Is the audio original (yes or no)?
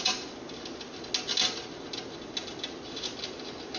yes